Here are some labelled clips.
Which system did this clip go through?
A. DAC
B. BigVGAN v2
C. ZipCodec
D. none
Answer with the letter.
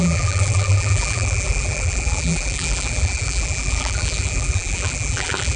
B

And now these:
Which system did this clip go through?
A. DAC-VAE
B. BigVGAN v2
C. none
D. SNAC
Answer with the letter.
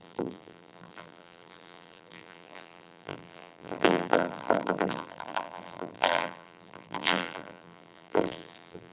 B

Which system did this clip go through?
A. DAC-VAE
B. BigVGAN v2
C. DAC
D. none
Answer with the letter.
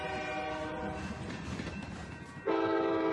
B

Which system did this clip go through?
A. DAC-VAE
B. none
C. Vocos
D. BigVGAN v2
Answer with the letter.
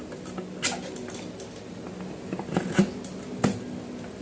B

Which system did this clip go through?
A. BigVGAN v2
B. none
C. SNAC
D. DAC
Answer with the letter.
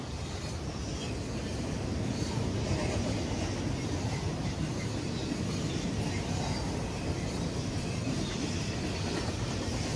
B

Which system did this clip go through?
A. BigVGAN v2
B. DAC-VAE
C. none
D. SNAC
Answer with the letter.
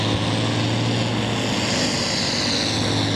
C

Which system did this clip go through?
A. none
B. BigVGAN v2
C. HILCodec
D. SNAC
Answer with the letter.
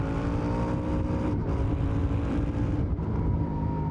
B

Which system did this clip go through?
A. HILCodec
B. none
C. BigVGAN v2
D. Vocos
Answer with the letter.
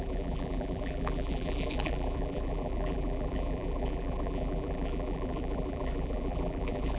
C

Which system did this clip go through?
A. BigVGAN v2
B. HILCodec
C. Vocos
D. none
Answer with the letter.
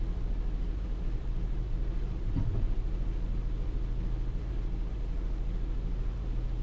A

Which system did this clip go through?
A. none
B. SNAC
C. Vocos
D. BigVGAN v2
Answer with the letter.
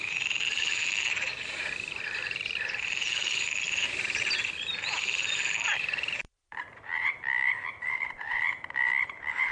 D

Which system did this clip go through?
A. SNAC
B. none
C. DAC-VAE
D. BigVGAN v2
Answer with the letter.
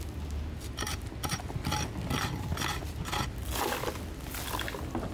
B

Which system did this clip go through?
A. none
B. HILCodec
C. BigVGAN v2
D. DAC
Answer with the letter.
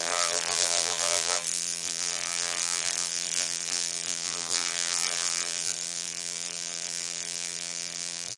C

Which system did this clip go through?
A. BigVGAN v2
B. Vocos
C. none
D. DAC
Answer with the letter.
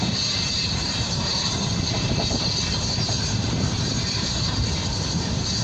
A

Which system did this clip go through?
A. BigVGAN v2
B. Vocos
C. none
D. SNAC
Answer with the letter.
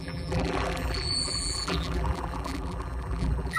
A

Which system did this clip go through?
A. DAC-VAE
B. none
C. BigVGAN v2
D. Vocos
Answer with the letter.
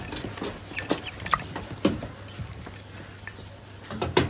B